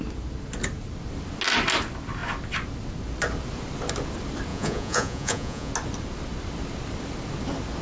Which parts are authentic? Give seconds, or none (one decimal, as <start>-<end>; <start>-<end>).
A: 0.0-4.5; 5.7-7.8